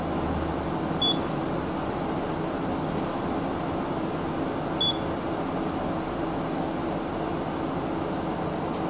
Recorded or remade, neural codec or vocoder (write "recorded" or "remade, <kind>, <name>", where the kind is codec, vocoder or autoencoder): recorded